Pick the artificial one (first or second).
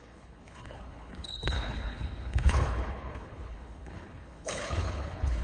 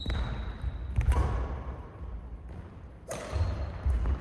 first